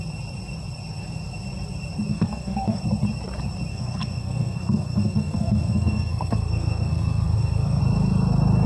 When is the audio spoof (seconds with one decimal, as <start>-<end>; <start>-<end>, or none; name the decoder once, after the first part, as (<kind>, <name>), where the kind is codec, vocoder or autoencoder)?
2.1-2.8 (codec, SNAC); 3.7-7.8